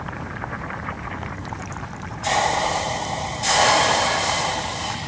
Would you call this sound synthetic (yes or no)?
yes